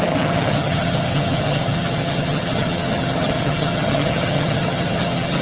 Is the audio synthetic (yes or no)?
yes